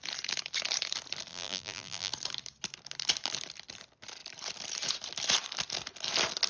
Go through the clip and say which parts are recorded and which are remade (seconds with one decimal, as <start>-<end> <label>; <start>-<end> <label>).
0.0-1.3 recorded; 1.3-2.1 remade; 2.1-6.5 recorded